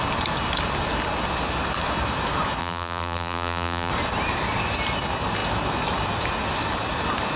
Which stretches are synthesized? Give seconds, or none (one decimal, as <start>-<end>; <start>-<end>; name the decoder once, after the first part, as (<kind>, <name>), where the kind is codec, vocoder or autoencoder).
2.6-3.9 (vocoder, BigVGAN v2)

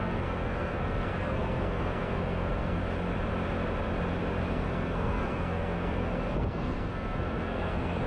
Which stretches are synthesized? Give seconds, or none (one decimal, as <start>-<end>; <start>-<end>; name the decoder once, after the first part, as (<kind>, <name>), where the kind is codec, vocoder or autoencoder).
0.0-2.8 (codec, SNAC); 4.5-8.1

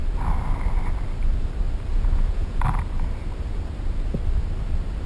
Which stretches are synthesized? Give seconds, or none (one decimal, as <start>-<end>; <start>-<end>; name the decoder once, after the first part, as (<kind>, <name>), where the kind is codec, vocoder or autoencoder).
1.9-2.6 (vocoder, Vocos)

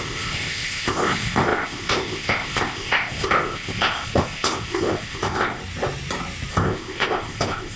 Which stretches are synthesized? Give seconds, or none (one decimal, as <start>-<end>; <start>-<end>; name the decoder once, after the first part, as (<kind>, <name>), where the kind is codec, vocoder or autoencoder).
0.0-5.6 (codec, ZipCodec); 6.5-7.8

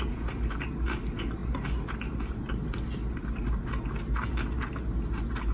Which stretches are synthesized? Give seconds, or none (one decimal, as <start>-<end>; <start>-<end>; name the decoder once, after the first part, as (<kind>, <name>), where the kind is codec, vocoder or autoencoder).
none

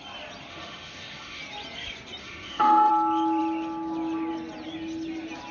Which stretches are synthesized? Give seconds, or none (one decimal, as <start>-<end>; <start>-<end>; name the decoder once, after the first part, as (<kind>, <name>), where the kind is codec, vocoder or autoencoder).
0.5-1.4 (autoencoder, DAC-VAE); 2.2-2.9